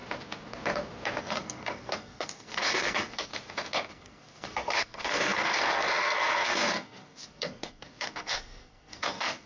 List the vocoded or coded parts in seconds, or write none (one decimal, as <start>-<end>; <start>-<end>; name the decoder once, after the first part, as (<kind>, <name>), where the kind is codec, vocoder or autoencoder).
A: 1.2-3.3 (codec, SNAC); 3.9-9.5